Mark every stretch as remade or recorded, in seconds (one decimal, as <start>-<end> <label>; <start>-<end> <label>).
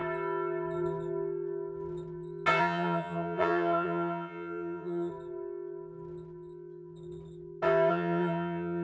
0.0-2.6 recorded; 2.6-5.1 remade; 5.1-7.9 recorded; 7.9-8.8 remade